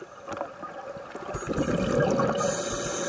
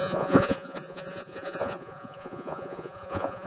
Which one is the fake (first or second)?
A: second